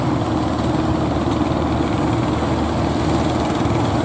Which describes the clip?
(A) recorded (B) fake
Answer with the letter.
A